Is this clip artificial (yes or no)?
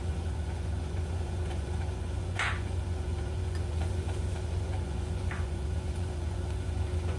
yes